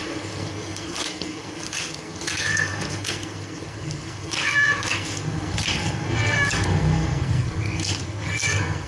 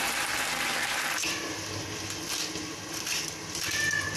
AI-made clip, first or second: first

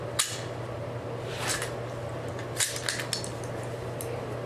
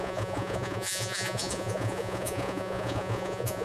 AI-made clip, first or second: second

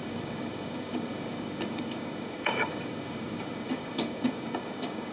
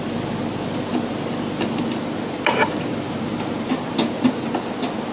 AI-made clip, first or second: first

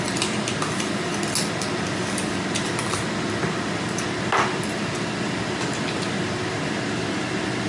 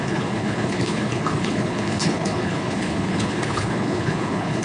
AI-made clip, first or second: second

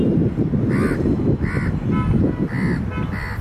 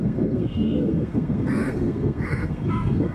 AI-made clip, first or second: second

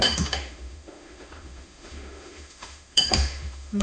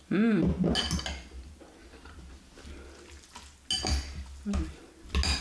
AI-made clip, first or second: first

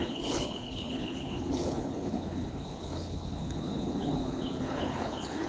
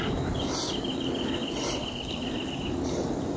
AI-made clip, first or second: first